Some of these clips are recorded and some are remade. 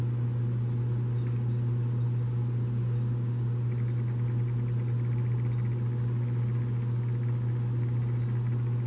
recorded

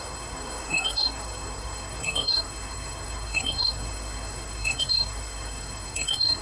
remade